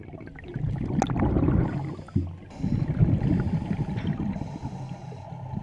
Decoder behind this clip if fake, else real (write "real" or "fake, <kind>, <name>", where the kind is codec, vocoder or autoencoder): real